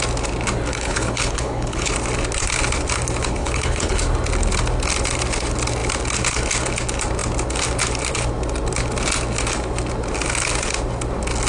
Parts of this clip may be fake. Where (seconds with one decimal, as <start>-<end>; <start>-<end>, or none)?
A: 0.7-1.9; 3.4-4.0